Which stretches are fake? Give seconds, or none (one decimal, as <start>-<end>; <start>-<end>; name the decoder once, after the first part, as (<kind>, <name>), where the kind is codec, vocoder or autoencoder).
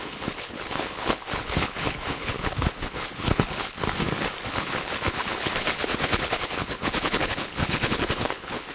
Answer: 0.0-3.8 (codec, HILCodec); 4.5-8.7